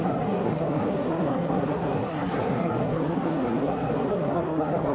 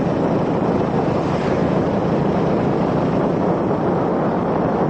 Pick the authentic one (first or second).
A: second